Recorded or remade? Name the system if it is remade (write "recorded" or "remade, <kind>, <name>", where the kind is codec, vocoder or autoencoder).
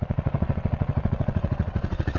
remade, vocoder, Vocos